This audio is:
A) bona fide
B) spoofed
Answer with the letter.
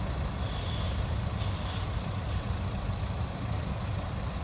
A